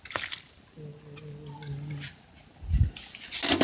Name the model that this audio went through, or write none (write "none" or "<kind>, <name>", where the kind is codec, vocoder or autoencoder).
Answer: none